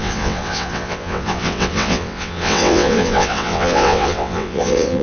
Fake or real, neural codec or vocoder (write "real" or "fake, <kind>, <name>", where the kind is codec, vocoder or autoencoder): fake, vocoder, WaveNeXt